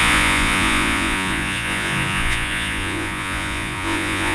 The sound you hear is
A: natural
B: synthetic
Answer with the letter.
B